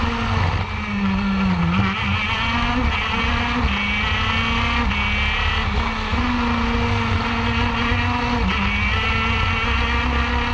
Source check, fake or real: real